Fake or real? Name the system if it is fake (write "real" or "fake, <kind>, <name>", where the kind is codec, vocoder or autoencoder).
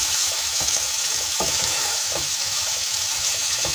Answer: fake, autoencoder, DAC-VAE